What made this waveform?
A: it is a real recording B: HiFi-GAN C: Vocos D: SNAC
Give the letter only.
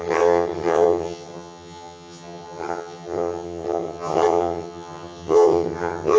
B